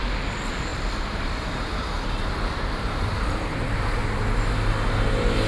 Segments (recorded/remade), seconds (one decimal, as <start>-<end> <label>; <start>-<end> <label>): 0.0-0.7 recorded; 0.7-4.0 remade; 4.0-5.5 recorded